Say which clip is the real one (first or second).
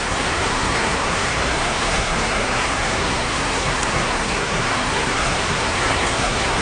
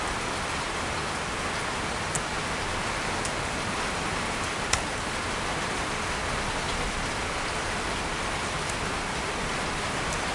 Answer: second